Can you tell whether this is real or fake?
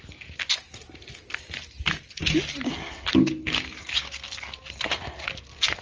real